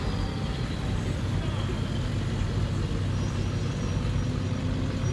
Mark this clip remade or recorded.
recorded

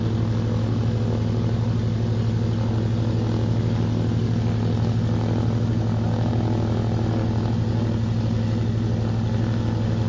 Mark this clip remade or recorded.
recorded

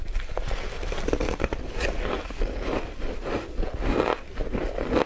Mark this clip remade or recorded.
recorded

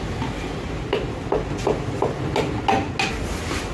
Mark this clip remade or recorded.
recorded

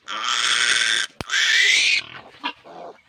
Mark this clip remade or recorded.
recorded